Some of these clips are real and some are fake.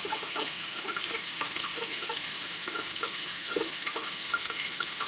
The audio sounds fake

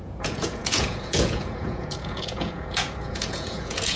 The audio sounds fake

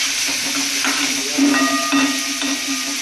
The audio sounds real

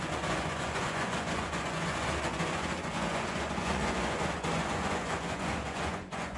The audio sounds fake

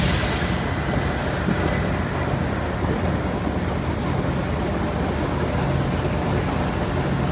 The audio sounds real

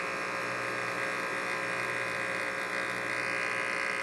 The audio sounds real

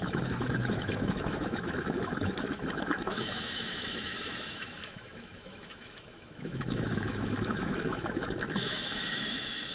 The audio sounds fake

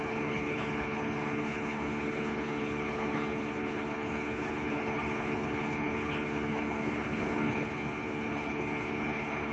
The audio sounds fake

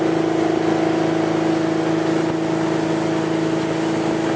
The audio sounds real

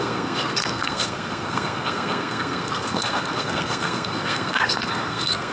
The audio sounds fake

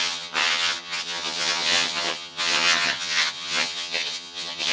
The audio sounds fake